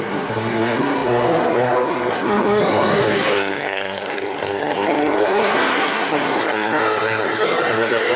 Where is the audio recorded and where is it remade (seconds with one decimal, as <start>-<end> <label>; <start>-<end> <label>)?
0.0-8.2 remade